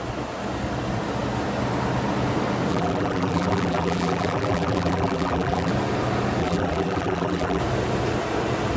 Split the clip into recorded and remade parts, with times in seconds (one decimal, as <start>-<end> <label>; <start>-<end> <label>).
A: 0.0-2.7 recorded; 2.7-5.7 remade; 5.7-6.4 recorded; 6.4-7.6 remade; 7.6-8.8 recorded